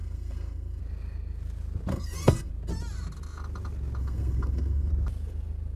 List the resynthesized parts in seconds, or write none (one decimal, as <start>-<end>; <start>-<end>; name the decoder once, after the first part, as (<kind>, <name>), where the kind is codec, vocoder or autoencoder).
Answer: 0.0-0.8 (codec, SNAC); 1.9-2.5; 4.0-4.9